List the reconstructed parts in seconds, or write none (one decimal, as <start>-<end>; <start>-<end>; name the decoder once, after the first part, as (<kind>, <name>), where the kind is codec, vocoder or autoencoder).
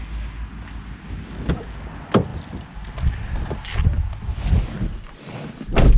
none